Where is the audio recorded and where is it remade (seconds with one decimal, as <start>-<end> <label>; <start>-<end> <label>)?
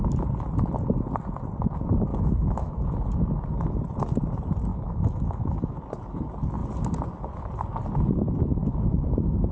0.0-2.1 recorded; 2.1-2.9 remade; 2.9-4.7 recorded; 4.7-5.8 remade; 5.8-8.6 recorded; 8.6-9.5 remade